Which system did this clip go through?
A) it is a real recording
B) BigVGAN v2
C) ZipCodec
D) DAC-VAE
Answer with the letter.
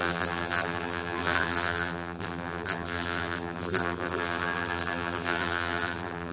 B